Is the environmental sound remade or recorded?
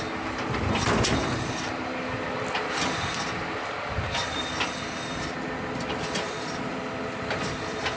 recorded